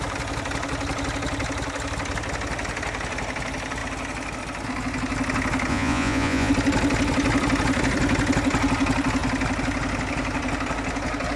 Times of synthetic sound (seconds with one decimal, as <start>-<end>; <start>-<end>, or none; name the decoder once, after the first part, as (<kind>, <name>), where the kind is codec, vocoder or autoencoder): 5.7-6.5 (vocoder, Vocos)